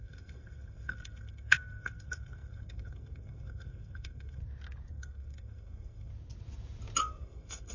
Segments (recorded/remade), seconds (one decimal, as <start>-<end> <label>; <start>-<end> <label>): 0.0-4.4 remade; 4.4-4.9 recorded; 4.9-6.1 remade; 6.1-7.0 recorded; 7.0-7.7 remade